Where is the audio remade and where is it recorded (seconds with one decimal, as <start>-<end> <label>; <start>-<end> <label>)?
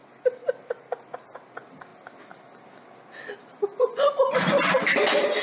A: 0.0-5.4 recorded